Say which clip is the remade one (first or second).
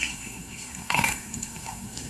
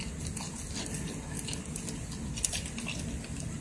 first